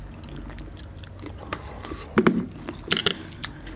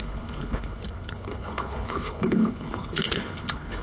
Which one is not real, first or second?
second